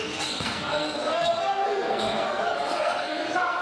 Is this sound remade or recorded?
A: remade